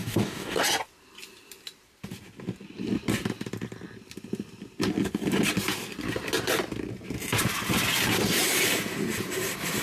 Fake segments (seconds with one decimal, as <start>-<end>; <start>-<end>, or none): 0.0-0.6